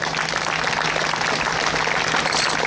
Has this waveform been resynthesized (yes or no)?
no